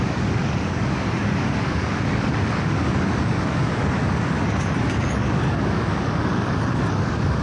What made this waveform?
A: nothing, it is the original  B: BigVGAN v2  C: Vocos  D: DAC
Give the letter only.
D